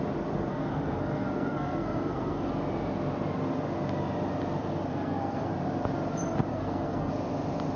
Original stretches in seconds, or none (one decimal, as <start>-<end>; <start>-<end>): 0.0-0.5; 2.5-4.9; 5.5-6.5; 7.1-7.8

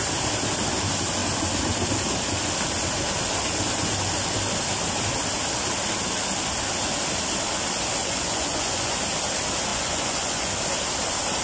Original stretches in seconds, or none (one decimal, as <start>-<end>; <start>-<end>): 0.0-8.0; 9.0-9.7; 10.5-11.4

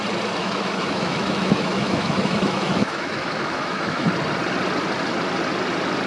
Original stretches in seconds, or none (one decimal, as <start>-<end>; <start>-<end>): 0.0-0.4; 4.1-6.1

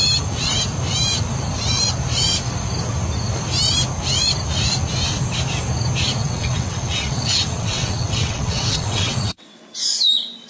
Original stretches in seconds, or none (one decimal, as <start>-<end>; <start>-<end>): 0.0-6.2; 9.6-10.5

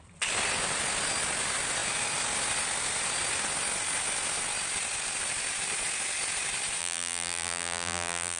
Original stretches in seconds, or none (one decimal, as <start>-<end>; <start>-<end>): 0.0-6.8

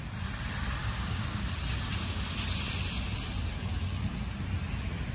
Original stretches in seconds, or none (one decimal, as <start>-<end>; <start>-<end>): 0.0-0.8; 1.5-5.1

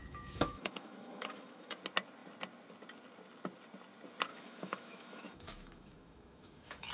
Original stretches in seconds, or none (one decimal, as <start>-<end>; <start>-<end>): 1.8-4.3